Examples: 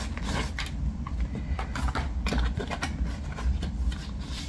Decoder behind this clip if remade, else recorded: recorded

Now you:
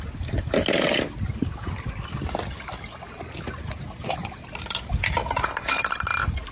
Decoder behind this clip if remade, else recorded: recorded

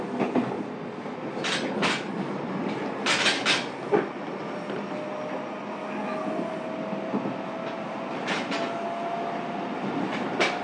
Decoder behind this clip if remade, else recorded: recorded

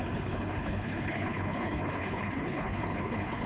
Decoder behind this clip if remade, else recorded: remade, codec, HILCodec